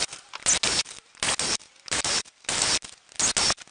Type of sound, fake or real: real